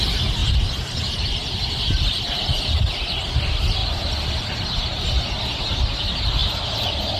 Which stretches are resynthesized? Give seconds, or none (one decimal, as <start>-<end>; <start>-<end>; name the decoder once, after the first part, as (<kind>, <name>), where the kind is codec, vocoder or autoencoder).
none